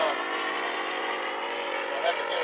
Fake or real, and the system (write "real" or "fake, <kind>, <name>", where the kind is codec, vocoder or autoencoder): fake, vocoder, Vocos